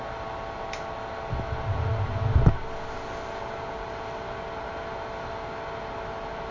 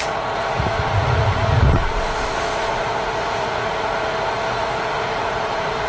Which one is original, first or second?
first